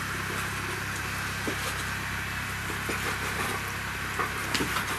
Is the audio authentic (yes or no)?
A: yes